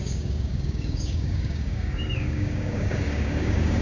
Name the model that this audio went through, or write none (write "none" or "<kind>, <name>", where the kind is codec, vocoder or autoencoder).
codec, DAC